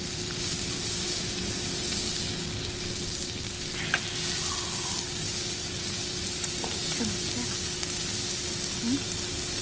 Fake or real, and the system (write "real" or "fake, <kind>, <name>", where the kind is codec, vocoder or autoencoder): real